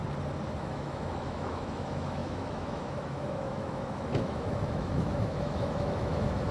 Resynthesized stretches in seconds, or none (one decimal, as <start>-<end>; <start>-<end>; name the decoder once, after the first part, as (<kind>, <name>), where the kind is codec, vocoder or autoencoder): 0.6-6.5 (autoencoder, DAC-VAE)